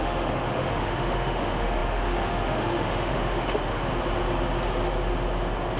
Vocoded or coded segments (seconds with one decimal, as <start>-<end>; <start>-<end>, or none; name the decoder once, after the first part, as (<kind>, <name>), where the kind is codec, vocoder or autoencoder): 0.0-3.9 (autoencoder, DAC-VAE)